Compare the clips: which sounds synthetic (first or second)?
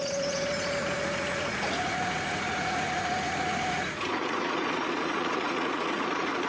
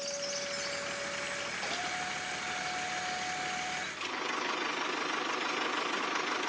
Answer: first